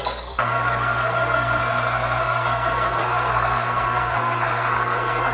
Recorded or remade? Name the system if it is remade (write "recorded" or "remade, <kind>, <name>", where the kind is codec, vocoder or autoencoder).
remade, codec, SNAC